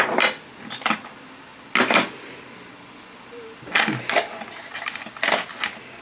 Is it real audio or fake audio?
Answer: real